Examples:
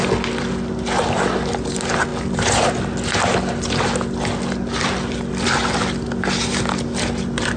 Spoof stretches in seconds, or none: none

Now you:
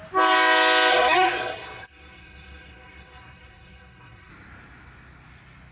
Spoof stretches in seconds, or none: 0.9-4.3